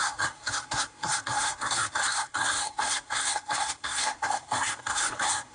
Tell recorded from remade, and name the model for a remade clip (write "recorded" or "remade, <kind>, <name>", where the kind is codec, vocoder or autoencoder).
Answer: remade, codec, SNAC